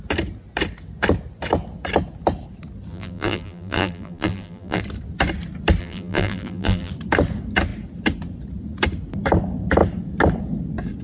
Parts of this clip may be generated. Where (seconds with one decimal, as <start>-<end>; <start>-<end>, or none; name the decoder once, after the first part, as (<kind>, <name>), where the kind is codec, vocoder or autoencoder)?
2.9-4.8 (vocoder, BigVGAN v2); 5.8-6.9